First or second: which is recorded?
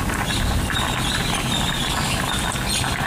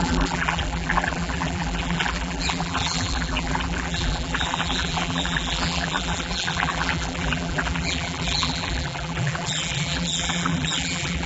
first